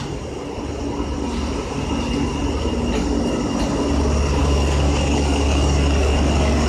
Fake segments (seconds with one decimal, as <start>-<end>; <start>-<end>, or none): 4.4-6.7